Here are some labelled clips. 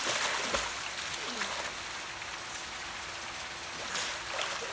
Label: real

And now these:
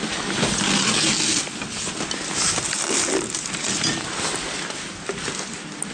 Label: real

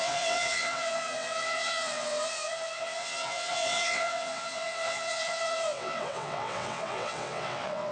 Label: fake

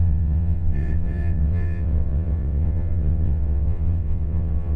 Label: fake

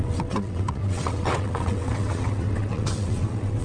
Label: fake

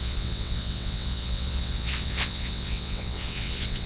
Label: fake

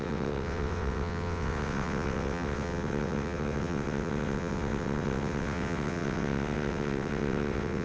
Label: fake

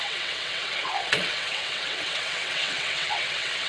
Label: fake